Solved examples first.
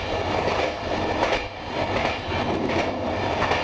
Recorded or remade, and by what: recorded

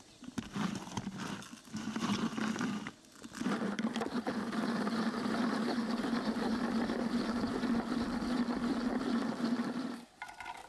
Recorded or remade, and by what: recorded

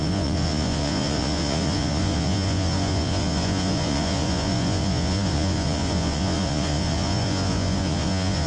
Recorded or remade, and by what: remade, vocoder, Vocos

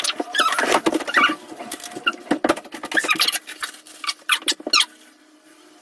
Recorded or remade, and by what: recorded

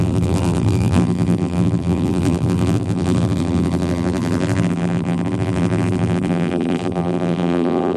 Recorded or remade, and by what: remade, vocoder, BigVGAN v2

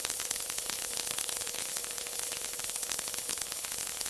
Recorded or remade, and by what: remade, codec, HILCodec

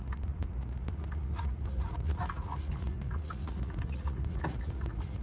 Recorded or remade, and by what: remade, vocoder, Vocos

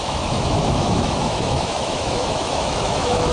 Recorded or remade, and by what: remade, autoencoder, DAC-VAE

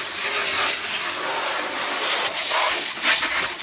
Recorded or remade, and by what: recorded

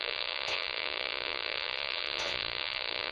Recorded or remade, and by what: remade, vocoder, Vocos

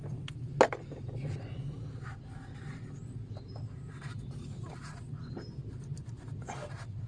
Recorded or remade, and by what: recorded